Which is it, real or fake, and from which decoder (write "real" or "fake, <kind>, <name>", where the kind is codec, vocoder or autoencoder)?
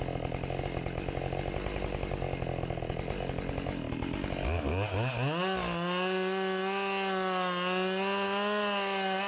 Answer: real